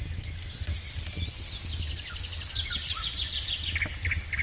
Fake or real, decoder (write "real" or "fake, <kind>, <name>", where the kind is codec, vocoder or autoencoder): real